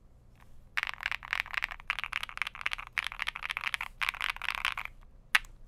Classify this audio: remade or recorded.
recorded